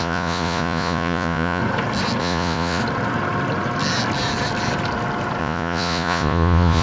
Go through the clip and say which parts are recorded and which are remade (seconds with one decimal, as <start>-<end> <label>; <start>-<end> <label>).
0.0-1.6 remade; 1.6-2.2 recorded; 2.2-2.8 remade; 2.8-5.4 recorded; 5.4-6.8 remade